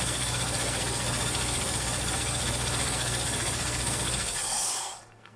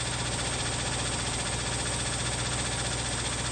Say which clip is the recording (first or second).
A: second